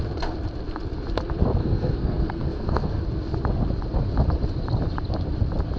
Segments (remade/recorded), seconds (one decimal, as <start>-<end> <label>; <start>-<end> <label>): 0.0-1.6 recorded; 1.6-3.0 remade; 3.0-5.8 recorded